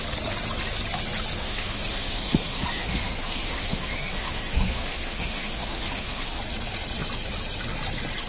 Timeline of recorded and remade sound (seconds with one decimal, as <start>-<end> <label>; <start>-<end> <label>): 0.0-1.4 recorded; 1.4-6.4 remade; 6.4-8.3 recorded